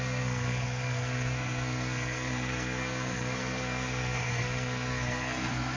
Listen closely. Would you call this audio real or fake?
fake